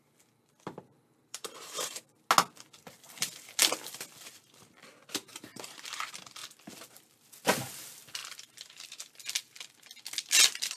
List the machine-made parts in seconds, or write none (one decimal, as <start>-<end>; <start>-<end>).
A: 1.2-2.0; 5.3-6.0; 8.2-9.0